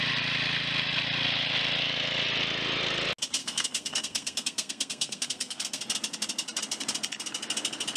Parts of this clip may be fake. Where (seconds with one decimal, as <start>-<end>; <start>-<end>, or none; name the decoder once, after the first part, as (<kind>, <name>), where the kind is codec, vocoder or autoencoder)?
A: 3.4-5.8 (codec, SNAC)